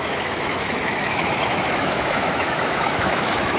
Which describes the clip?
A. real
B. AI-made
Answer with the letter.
B